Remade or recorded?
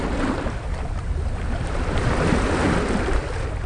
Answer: recorded